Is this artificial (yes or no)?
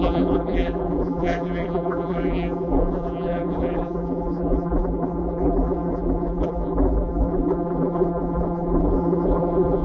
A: yes